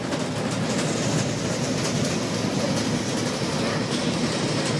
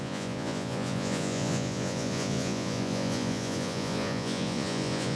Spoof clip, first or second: second